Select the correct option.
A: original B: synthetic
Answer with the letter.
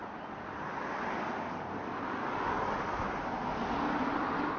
A